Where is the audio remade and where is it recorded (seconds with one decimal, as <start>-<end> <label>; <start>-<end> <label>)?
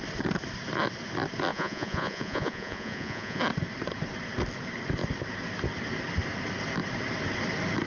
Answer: 0.0-1.5 recorded; 1.5-3.4 remade; 3.4-7.9 recorded